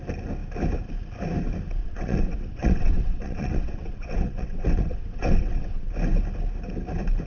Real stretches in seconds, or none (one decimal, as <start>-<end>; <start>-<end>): 0.0-1.8; 5.9-7.3